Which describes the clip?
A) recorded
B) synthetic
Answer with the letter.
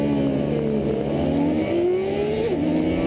A